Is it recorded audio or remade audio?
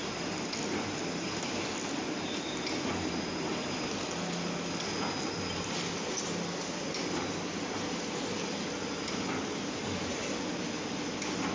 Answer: recorded